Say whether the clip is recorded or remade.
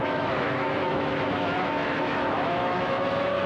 remade